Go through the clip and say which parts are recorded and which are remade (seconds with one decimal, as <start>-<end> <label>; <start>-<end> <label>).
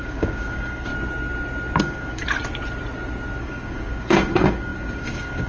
0.0-0.9 remade; 0.9-1.8 recorded; 1.8-2.2 remade; 2.2-3.4 recorded; 3.4-5.5 remade